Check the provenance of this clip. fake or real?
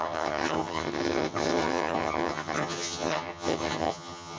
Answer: fake